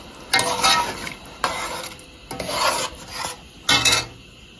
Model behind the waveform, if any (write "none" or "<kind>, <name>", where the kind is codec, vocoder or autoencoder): none